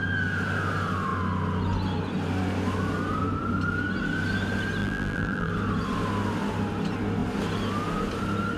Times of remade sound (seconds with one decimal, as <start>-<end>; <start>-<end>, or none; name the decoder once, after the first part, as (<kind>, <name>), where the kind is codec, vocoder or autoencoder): 4.8-5.5 (vocoder, BigVGAN v2)